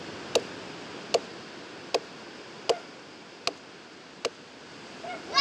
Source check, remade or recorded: recorded